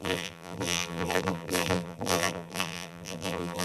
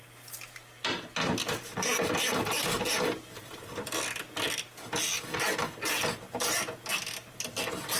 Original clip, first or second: second